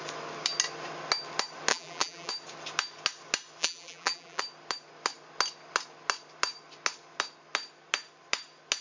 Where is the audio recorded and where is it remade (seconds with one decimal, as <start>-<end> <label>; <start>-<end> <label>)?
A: 0.0-1.7 recorded; 1.7-2.3 remade; 2.3-3.6 recorded; 3.6-4.4 remade; 4.4-8.8 recorded